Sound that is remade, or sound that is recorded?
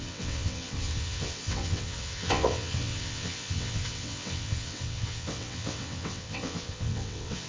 remade